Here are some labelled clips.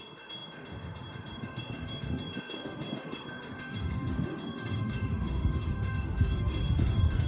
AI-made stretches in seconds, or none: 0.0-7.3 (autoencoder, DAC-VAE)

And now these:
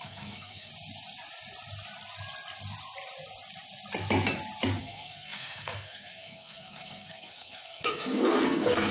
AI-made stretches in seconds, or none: 0.0-0.7 (codec, SNAC); 4.8-8.9

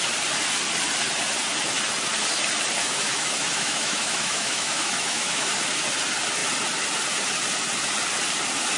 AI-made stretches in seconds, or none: 2.8-5.5 (autoencoder, DAC-VAE)

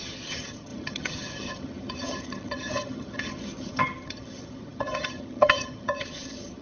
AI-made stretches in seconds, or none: 0.0-6.6 (vocoder, HiFi-GAN)